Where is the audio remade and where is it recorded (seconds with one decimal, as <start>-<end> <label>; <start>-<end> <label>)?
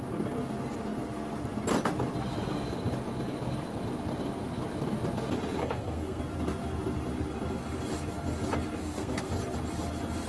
0.0-5.6 recorded; 5.6-6.2 remade; 6.2-8.8 recorded; 8.8-9.3 remade; 9.3-10.3 recorded